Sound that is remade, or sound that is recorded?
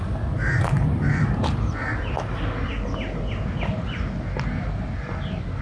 recorded